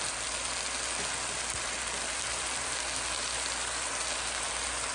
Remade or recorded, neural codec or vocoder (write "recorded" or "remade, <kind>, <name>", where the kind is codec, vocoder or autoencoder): recorded